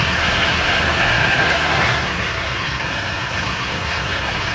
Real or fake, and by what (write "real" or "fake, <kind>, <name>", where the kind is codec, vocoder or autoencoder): fake, codec, SNAC